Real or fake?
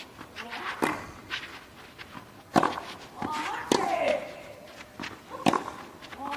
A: real